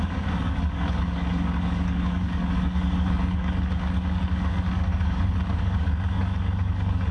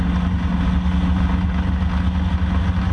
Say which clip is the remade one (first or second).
first